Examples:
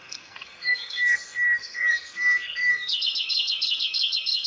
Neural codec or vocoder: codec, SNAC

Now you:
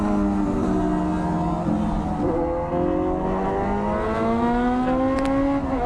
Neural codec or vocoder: none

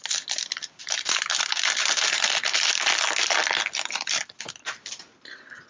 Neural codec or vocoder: none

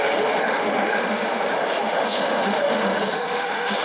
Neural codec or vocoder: autoencoder, DAC-VAE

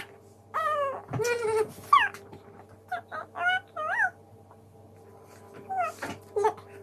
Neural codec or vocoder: none